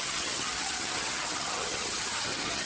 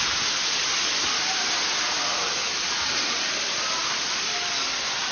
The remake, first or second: first